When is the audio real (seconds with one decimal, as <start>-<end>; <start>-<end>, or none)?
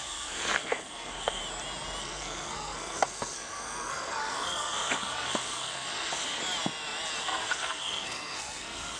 1.4-2.0; 6.4-7.2